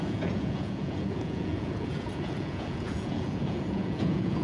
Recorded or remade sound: remade